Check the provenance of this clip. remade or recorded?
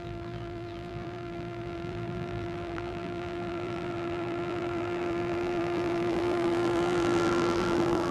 remade